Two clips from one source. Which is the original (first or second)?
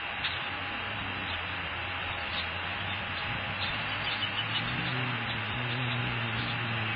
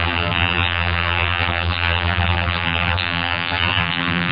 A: first